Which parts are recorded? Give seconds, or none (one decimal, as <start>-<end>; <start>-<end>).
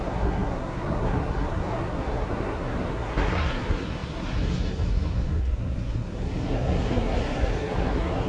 none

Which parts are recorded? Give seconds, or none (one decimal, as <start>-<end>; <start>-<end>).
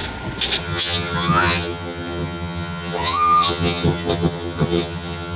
0.0-0.6